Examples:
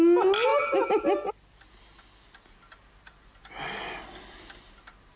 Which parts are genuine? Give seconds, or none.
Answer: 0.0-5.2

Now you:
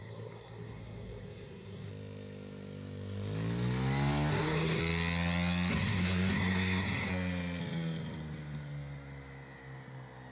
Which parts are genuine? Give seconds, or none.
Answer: 1.9-4.3; 4.8-5.7; 7.1-10.3